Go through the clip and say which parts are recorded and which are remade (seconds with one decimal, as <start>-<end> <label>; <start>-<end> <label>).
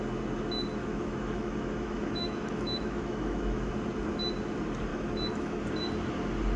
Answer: 0.0-0.8 recorded; 0.8-3.7 remade; 3.7-4.9 recorded; 4.9-5.6 remade; 5.6-6.6 recorded